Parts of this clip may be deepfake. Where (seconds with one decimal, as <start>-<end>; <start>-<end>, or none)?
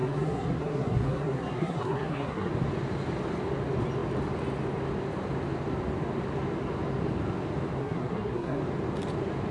0.0-2.5; 7.8-8.6